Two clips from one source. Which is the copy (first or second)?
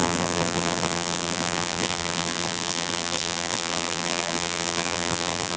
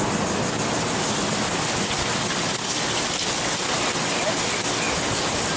first